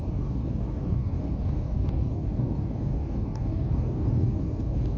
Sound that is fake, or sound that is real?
fake